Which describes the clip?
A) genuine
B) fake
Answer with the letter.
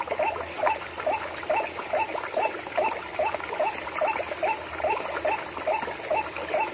A